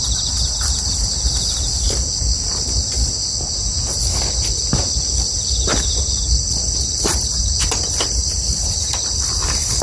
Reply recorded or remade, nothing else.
recorded